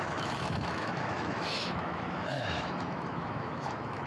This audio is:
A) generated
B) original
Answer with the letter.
A